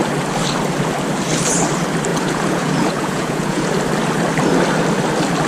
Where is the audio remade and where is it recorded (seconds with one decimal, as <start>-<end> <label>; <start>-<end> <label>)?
0.0-2.1 recorded; 2.1-3.7 remade; 3.7-5.5 recorded